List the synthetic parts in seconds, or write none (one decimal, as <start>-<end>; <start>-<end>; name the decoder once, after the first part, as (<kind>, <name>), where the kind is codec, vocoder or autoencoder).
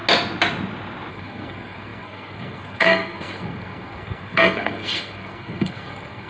1.1-6.3 (codec, SNAC)